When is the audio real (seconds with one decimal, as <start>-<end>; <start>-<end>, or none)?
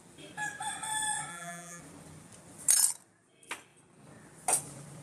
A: 0.0-1.3; 1.8-5.0